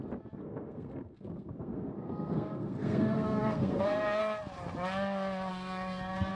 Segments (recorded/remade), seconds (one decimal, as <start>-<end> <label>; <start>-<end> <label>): 0.0-0.4 recorded; 0.4-4.2 remade; 4.2-5.5 recorded; 5.5-6.3 remade